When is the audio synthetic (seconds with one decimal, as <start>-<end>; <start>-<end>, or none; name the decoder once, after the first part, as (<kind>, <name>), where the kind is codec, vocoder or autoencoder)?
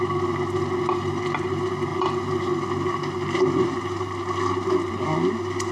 none